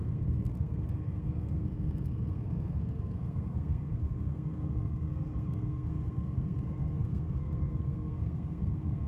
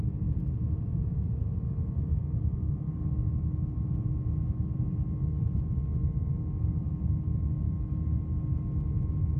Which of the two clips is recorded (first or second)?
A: second